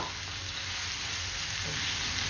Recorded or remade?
recorded